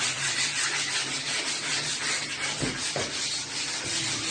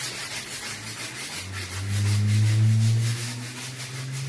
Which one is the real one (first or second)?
second